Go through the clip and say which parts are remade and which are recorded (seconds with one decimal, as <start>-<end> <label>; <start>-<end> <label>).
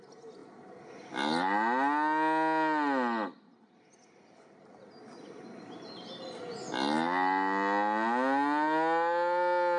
0.0-9.8 recorded